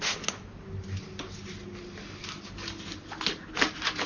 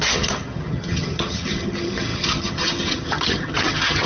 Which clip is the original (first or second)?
first